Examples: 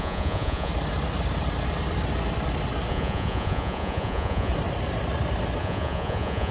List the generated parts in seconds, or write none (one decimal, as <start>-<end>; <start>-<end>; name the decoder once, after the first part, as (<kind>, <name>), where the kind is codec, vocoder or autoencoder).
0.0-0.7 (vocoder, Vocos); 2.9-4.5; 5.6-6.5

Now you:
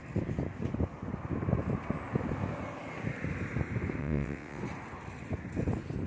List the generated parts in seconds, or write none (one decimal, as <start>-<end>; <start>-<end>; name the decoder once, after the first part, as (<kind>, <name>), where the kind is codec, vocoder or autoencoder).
4.0-4.6 (vocoder, WaveNeXt)

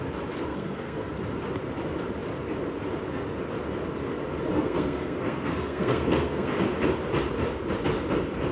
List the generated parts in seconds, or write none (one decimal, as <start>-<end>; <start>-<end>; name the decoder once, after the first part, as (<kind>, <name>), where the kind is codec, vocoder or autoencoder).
0.5-1.1 (codec, SNAC); 4.5-6.5

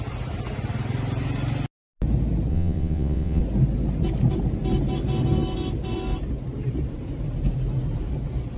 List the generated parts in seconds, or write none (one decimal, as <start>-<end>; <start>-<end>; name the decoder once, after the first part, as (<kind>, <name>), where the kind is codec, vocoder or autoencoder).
2.5-3.4 (vocoder, WaveNeXt)